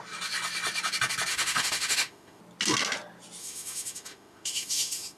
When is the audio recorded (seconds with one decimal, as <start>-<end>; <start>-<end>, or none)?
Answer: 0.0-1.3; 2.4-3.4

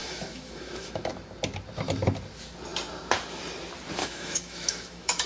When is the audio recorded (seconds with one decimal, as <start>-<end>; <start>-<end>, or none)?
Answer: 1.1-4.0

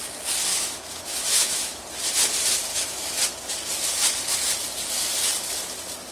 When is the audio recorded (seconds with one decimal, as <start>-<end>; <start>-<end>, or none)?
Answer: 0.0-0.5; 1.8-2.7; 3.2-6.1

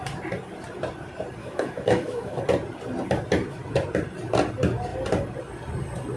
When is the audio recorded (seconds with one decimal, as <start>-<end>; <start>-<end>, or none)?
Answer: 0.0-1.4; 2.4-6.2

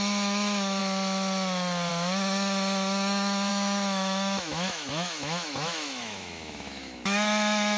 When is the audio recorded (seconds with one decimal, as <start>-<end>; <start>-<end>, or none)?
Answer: 0.8-1.9

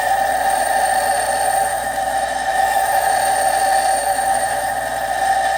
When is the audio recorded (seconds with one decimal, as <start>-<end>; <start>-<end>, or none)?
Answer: 0.0-1.7; 3.1-4.0; 4.7-5.6

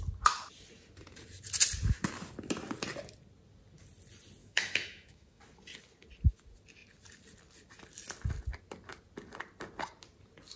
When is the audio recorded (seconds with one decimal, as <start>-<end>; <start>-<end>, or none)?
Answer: 0.0-4.4; 5.4-10.6